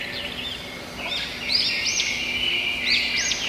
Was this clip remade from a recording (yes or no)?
no